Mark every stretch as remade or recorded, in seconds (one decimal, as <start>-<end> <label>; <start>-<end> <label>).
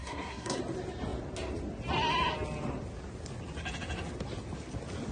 0.0-0.6 remade; 0.6-5.1 recorded